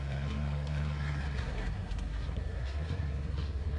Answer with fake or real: fake